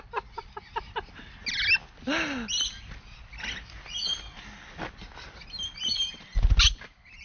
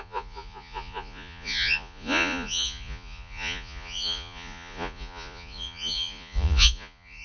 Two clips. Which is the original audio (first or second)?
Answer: first